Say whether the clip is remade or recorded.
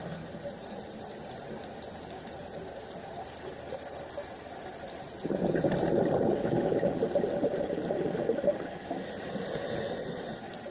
recorded